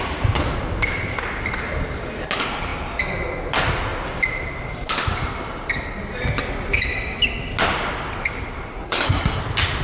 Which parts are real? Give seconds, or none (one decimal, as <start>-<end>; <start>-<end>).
0.0-8.7; 9.4-9.8